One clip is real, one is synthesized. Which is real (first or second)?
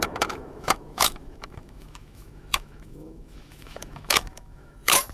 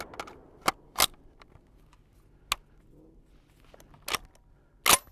second